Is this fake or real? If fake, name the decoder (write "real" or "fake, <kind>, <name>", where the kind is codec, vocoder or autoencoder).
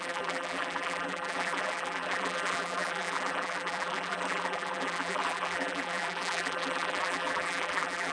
fake, vocoder, BigVGAN v2